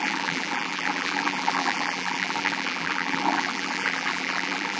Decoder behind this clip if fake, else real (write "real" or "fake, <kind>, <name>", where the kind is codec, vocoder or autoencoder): fake, vocoder, BigVGAN v2